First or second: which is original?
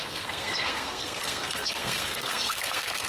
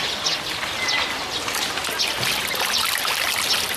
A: second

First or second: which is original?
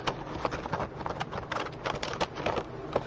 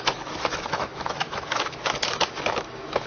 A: first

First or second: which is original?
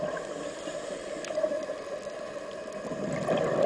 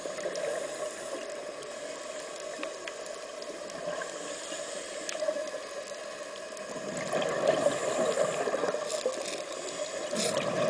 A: second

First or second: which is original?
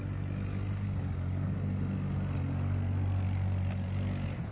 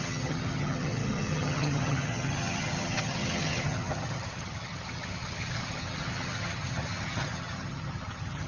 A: first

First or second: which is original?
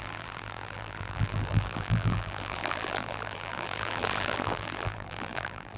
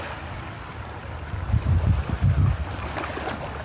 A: second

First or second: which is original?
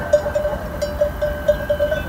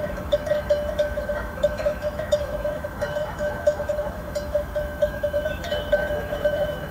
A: first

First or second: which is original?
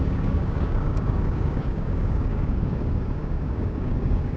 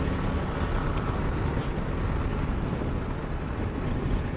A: second